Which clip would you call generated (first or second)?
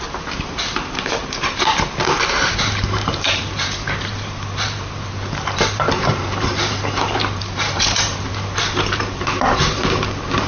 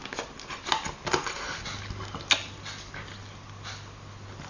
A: first